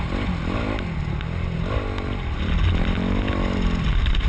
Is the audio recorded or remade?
recorded